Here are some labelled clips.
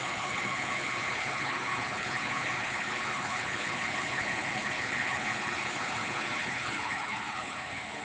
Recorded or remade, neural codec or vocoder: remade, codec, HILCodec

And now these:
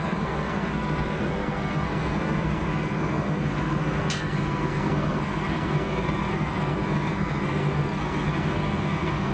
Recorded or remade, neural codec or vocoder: remade, codec, SNAC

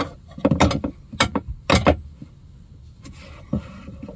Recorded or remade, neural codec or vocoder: recorded